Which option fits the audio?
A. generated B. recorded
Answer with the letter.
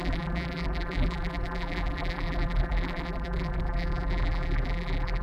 A